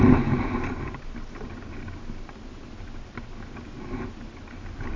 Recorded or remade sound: recorded